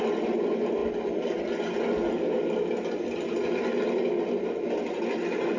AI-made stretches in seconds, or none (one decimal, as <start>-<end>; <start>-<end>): none